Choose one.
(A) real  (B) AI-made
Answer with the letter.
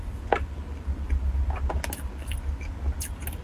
A